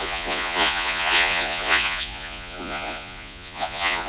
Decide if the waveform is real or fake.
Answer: fake